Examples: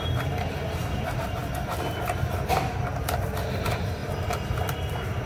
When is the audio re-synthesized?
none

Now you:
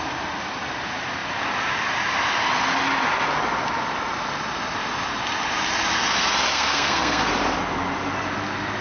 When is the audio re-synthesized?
6.5-7.3 (codec, SNAC)

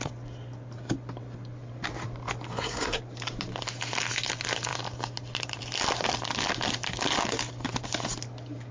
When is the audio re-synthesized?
2.5-3.0 (codec, SNAC)